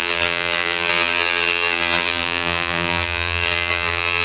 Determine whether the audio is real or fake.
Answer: fake